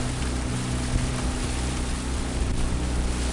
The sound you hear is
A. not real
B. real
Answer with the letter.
B